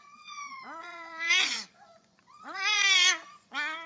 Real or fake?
fake